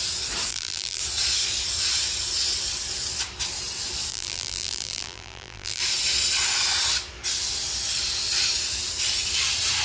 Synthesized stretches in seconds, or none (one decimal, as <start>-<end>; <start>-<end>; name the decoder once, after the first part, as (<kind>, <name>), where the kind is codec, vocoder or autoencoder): 0.5-1.0 (vocoder, BigVGAN v2); 4.1-5.8